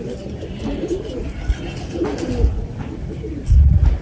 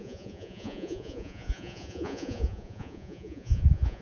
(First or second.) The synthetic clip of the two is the second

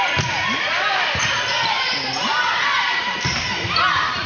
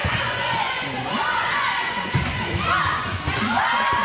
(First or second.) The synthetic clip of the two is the second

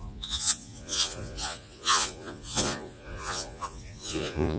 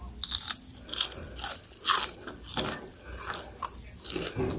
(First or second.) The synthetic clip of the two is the first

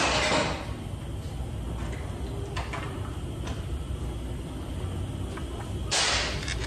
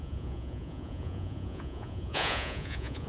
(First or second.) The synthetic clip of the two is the second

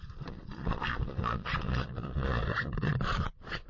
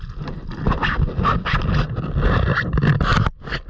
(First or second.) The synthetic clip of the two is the first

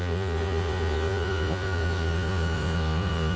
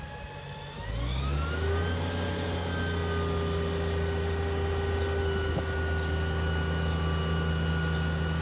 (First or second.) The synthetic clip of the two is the first